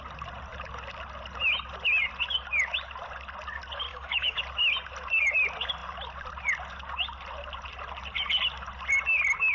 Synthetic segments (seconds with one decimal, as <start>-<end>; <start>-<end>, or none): 3.9-4.4